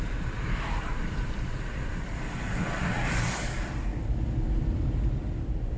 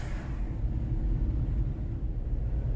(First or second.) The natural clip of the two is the second